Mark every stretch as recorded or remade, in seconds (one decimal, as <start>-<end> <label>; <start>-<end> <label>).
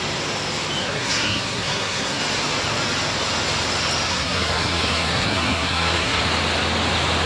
0.0-0.8 recorded; 0.8-2.2 remade; 2.2-4.1 recorded; 4.1-6.2 remade; 6.2-7.3 recorded